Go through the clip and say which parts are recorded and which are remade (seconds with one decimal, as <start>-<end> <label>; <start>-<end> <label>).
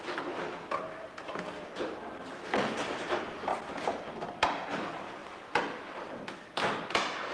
0.0-7.3 recorded